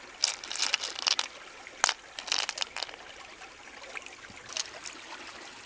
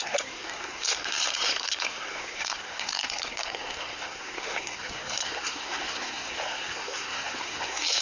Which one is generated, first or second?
second